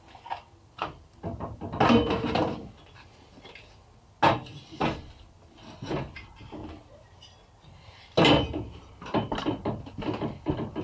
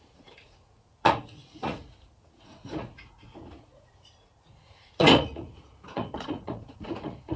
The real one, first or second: first